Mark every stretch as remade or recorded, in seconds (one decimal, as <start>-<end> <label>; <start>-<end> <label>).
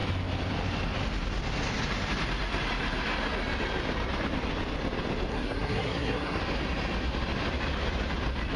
0.0-5.3 recorded; 5.3-6.4 remade; 6.4-8.6 recorded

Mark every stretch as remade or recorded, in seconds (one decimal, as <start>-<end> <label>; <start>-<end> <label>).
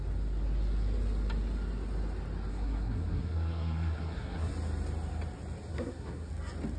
0.0-2.5 recorded; 2.5-4.5 remade; 4.5-5.7 recorded; 5.7-6.3 remade; 6.3-6.8 recorded